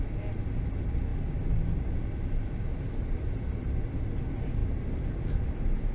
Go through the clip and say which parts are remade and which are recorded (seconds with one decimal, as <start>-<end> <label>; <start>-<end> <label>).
0.0-4.6 recorded; 4.6-5.5 remade; 5.5-5.9 recorded